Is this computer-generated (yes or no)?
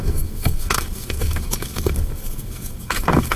yes